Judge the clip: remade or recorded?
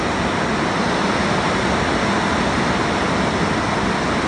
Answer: recorded